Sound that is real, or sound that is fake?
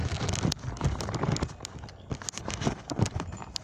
real